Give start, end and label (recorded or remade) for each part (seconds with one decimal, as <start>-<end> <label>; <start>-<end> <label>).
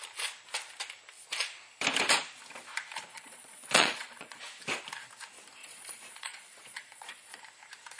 0.0-3.1 recorded; 3.1-4.4 remade; 4.4-5.6 recorded; 5.6-7.4 remade; 7.4-8.0 recorded